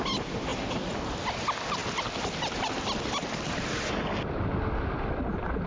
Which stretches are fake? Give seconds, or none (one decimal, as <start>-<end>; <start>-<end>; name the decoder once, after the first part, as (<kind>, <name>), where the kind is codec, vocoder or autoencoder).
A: none